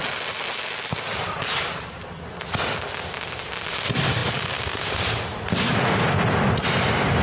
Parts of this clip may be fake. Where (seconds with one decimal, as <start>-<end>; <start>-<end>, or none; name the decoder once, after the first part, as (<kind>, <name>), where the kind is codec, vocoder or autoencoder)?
none